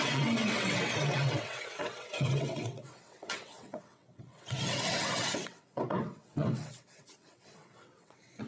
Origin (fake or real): fake